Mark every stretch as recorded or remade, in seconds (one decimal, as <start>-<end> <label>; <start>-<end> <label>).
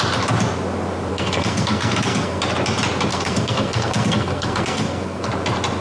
0.0-1.1 recorded; 1.1-2.4 remade; 2.4-3.1 recorded; 3.1-5.3 remade; 5.3-5.8 recorded